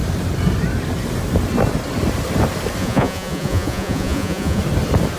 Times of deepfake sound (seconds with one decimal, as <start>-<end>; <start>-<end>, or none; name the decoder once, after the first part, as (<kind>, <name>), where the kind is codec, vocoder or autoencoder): 2.8-4.6 (vocoder, Vocos)